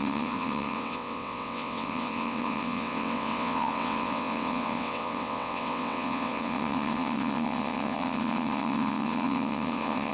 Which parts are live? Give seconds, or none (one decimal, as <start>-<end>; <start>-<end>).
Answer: none